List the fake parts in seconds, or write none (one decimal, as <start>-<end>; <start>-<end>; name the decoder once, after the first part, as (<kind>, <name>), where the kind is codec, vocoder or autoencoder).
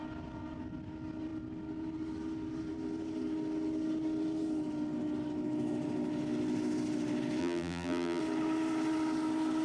7.4-8.2 (vocoder, BigVGAN v2)